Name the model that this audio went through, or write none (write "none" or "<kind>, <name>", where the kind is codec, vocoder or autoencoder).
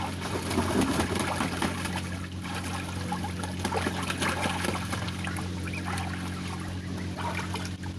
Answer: none